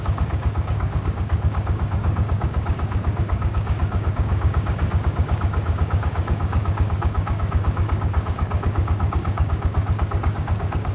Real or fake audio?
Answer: fake